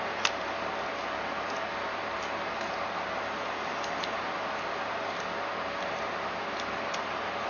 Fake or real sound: real